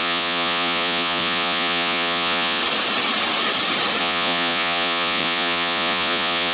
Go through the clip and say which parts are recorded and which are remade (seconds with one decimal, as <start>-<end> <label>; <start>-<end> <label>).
0.0-2.6 remade; 2.6-4.0 recorded; 4.0-6.5 remade